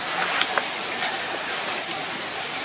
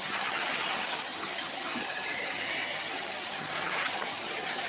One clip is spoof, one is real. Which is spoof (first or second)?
second